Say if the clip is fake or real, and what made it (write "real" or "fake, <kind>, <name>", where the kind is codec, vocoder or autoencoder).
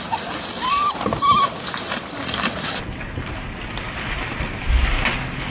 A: real